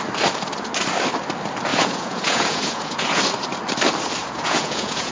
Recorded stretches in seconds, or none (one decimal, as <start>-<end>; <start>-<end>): 0.0-1.7; 3.2-4.2